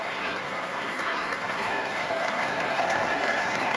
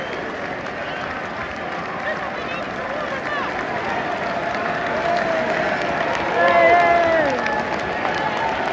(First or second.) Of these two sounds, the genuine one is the second